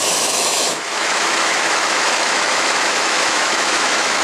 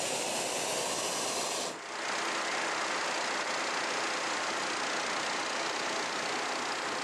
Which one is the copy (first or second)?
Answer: first